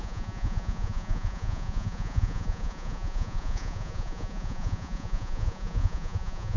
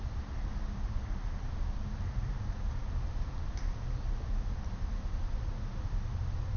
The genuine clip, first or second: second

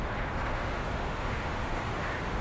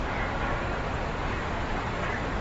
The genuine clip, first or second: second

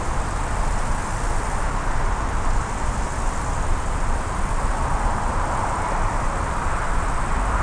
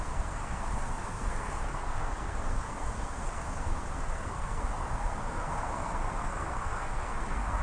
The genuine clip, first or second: first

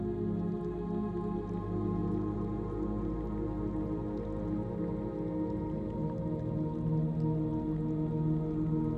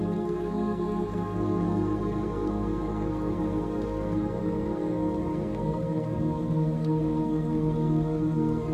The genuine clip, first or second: first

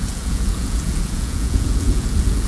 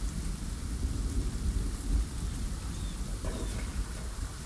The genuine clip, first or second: second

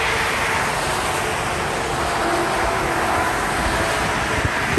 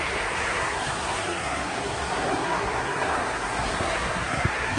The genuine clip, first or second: first